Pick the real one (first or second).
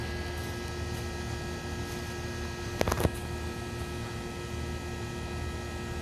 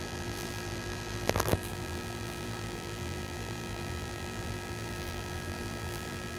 first